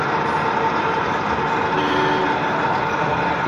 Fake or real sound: real